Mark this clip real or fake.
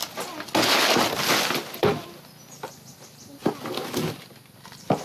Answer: real